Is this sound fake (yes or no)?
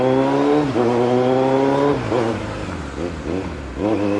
no